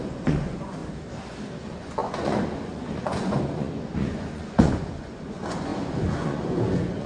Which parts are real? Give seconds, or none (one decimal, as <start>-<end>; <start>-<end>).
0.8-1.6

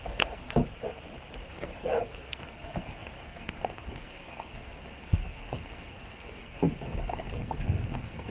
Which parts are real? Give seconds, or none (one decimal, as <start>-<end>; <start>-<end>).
0.6-1.5

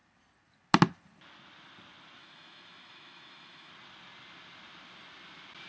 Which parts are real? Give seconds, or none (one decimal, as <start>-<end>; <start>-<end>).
0.0-2.2; 3.7-5.7